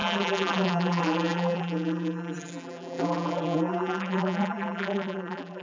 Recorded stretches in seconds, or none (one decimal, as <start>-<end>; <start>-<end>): none